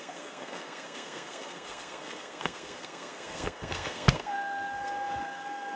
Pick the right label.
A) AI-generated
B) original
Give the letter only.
A